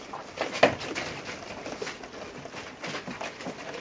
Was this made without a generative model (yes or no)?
yes